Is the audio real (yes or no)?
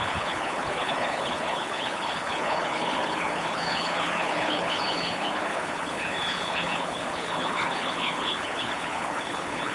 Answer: no